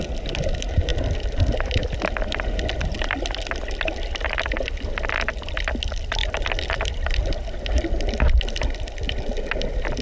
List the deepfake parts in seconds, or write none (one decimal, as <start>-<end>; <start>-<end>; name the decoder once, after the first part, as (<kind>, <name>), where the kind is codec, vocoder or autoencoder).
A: none

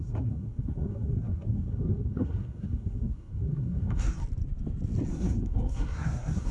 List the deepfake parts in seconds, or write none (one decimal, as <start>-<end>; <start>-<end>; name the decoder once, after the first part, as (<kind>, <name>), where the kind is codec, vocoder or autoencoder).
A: 0.0-4.2 (codec, SNAC); 5.1-6.5

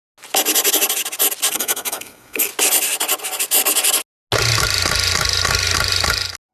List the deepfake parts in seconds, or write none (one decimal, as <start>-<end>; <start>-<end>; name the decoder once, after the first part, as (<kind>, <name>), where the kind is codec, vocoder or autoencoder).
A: 1.5-2.5 (codec, SNAC)

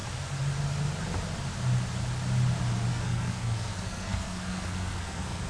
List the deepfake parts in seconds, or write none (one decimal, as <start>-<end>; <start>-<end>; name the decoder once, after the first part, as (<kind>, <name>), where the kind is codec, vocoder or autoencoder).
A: 2.9-5.5 (codec, SNAC)

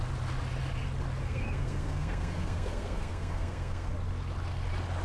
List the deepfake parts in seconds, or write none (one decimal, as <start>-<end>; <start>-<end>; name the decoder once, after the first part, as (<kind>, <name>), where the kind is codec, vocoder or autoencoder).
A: 1.2-3.9 (codec, SNAC)

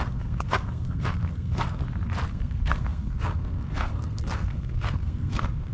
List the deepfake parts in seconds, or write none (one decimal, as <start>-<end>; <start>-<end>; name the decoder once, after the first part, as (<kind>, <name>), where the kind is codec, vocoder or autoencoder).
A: 0.0-1.8 (codec, SNAC); 2.3-5.7

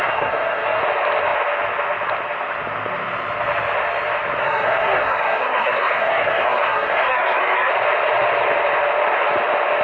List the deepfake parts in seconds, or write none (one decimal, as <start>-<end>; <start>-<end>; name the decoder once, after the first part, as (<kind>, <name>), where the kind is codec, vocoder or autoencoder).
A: 0.0-0.8 (codec, SNAC); 4.4-7.7

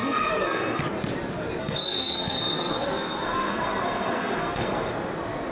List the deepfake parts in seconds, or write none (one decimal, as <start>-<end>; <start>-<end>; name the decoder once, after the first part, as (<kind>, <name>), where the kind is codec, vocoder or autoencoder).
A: 0.0-0.8 (codec, SNAC); 1.6-4.9